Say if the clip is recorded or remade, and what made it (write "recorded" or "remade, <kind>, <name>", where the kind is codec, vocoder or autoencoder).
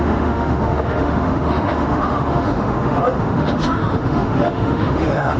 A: remade, autoencoder, DAC-VAE